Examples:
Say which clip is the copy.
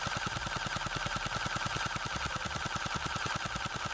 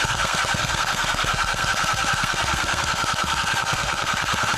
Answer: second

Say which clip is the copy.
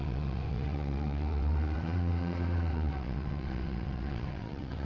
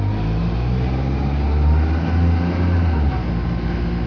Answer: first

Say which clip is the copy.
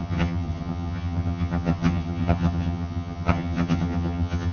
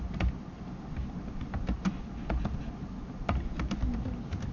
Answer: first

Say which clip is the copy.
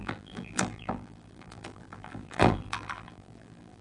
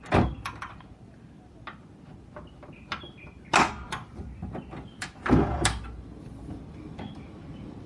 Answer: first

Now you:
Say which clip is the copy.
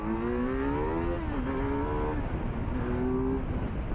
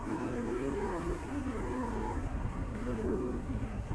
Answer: second